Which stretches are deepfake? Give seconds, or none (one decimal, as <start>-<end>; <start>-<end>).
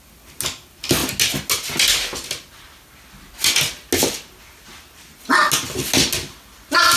none